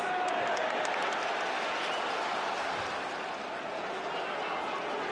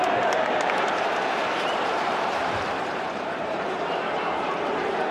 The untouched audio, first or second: first